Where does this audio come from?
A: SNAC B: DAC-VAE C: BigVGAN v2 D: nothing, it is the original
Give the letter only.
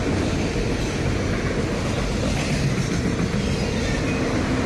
D